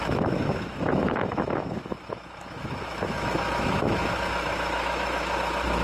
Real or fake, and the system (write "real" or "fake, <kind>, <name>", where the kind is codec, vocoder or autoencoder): fake, autoencoder, DAC-VAE